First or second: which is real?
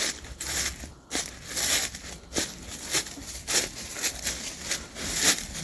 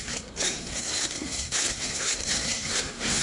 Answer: first